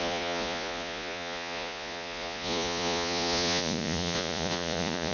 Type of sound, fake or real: fake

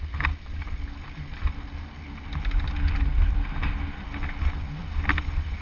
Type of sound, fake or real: real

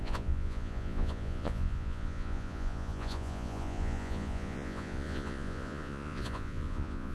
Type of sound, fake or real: fake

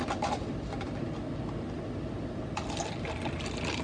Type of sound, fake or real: real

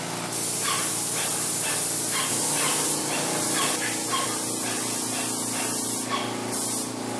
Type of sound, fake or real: real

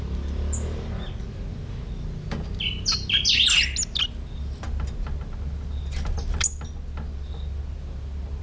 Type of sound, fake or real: real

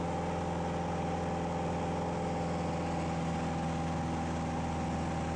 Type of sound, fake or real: real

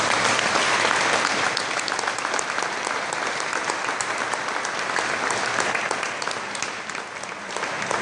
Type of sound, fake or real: real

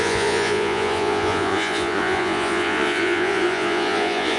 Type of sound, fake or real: fake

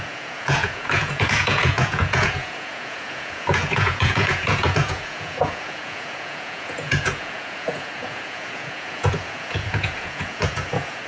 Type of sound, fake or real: fake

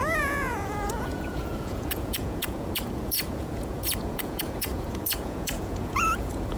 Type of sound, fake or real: fake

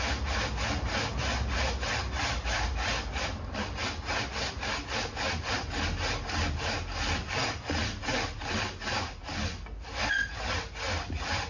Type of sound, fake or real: real